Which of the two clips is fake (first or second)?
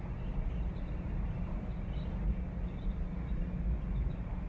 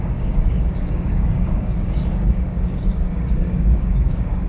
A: second